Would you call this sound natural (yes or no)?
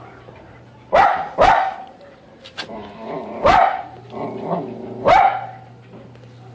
yes